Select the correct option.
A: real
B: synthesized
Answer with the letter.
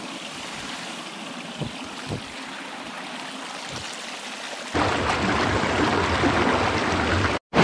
A